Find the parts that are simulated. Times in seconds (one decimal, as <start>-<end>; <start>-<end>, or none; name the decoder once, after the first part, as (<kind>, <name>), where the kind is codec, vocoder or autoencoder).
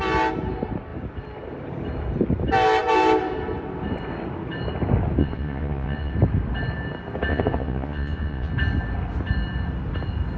5.2-6.1 (vocoder, Vocos); 7.3-8.5